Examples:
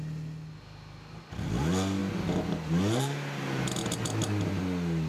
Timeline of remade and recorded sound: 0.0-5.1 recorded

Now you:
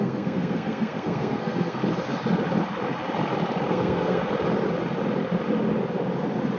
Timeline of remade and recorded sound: 0.0-1.8 remade; 1.8-3.7 recorded; 3.7-4.2 remade; 4.2-6.6 recorded

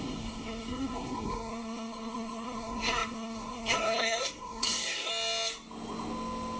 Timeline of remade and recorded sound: 0.0-5.1 remade; 5.1-6.6 recorded